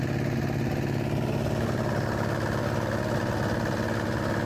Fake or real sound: real